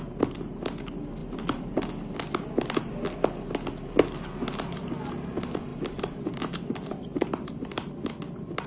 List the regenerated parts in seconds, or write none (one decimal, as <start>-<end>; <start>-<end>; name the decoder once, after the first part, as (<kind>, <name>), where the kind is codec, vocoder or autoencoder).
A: 1.2-1.9 (vocoder, BigVGAN v2); 5.7-7.9